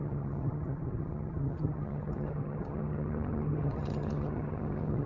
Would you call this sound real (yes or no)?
no